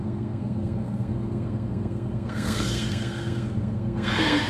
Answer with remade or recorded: remade